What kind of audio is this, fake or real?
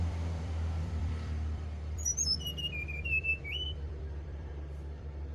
fake